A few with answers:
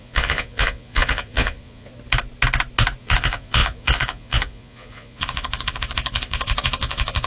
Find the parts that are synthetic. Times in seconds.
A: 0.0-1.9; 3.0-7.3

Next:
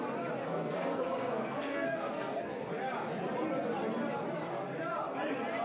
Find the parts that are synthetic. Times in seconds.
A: 0.4-2.7

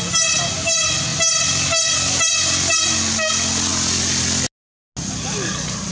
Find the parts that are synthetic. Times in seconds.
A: none

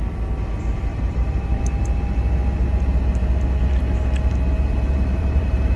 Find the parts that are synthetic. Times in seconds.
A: 0.9-1.6; 4.7-5.8

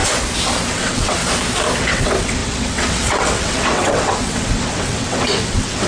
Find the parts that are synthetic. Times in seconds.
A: 0.7-1.2; 1.8-5.9

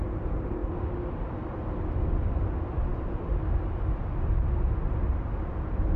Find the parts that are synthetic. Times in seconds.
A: none

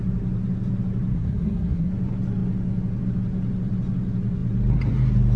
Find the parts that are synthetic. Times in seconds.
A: 1.1-1.9

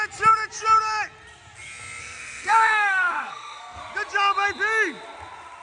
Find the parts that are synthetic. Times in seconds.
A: 2.0-3.8